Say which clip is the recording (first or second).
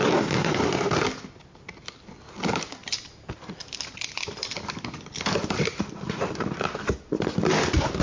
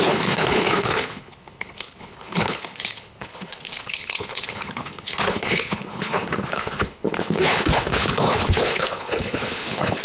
first